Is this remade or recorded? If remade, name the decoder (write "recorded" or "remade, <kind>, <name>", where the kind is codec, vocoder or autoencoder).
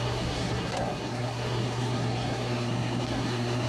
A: remade, codec, SNAC